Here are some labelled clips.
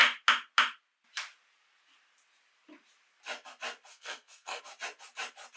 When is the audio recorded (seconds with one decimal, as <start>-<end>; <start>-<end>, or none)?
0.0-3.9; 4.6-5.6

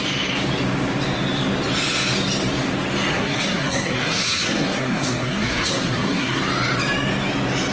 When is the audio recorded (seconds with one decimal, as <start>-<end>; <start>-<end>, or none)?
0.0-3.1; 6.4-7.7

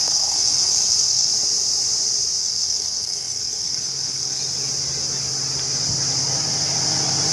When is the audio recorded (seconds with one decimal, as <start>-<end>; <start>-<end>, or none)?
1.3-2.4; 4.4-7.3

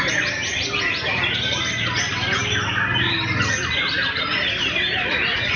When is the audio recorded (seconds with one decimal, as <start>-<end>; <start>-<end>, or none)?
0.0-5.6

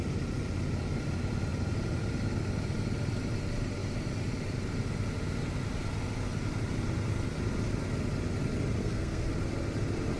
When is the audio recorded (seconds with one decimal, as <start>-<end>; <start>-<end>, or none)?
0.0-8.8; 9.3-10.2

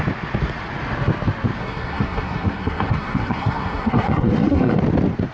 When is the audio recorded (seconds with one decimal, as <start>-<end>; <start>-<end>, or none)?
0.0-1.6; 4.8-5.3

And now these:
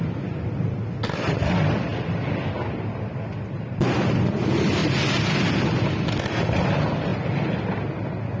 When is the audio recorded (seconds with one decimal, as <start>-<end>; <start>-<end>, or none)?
0.0-8.4

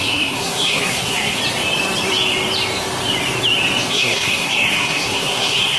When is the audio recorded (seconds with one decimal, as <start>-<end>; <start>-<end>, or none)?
1.4-3.9